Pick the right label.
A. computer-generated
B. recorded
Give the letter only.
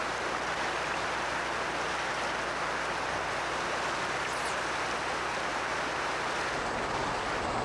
B